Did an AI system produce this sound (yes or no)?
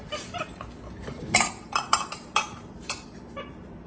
yes